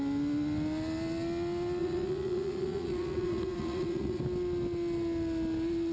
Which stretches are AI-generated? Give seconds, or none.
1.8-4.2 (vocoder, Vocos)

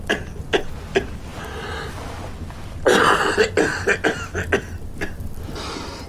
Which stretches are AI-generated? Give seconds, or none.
none

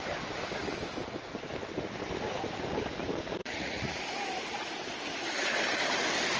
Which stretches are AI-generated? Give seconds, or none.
3.4-4.7 (vocoder, Vocos)

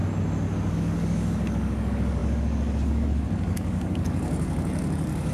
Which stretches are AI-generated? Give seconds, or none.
0.7-5.3 (codec, DAC)

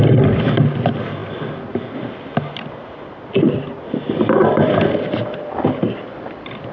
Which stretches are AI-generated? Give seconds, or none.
none